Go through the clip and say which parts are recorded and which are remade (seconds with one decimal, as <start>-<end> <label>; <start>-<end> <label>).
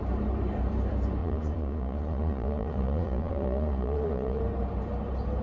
0.0-1.2 recorded; 1.2-4.4 remade; 4.4-5.4 recorded